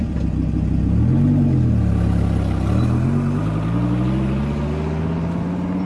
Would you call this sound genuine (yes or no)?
yes